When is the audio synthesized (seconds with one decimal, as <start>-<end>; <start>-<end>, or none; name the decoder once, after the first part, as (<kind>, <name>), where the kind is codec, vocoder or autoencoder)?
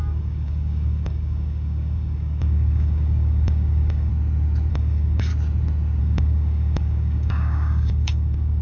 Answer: 0.0-4.1 (codec, DAC); 4.7-5.3; 6.0-8.6